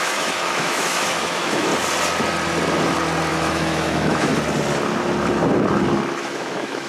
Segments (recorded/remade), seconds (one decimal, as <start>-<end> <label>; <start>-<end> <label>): 0.0-1.7 remade; 1.7-3.3 recorded; 3.3-4.3 remade; 4.3-6.2 recorded; 6.2-6.9 remade